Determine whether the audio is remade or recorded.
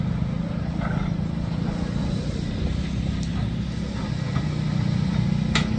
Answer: recorded